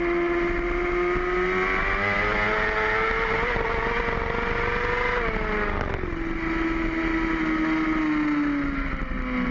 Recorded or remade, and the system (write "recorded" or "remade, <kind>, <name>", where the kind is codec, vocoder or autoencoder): recorded